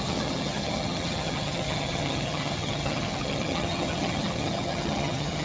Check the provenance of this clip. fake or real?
fake